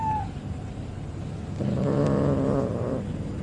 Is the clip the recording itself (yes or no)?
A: yes